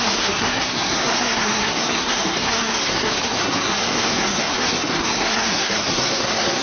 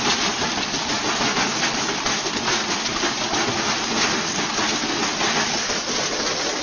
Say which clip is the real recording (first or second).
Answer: second